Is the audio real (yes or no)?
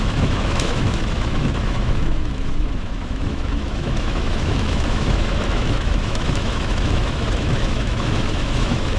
no